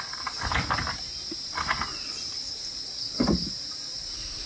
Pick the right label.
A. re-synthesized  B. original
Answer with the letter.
B